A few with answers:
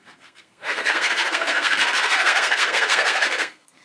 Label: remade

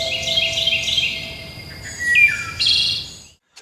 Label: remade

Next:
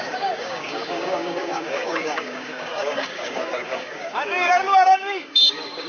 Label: remade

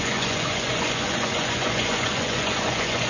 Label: remade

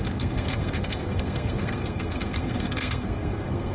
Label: remade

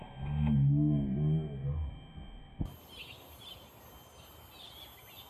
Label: recorded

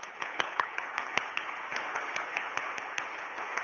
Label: remade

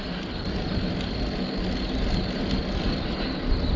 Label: recorded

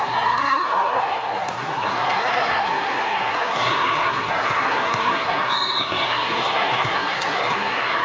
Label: remade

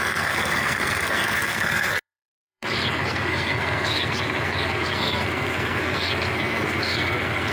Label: remade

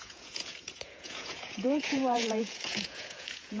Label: remade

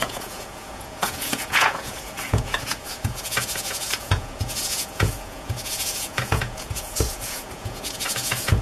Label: remade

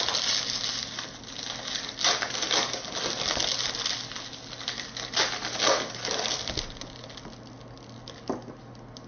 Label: recorded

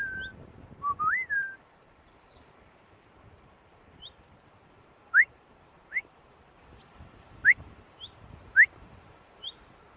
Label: remade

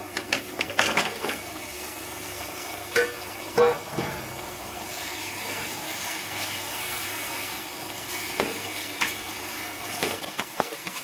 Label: remade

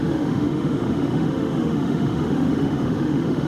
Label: remade